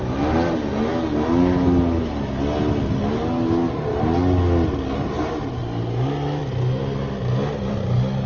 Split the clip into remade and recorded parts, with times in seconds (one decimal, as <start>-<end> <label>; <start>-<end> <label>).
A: 0.0-8.3 recorded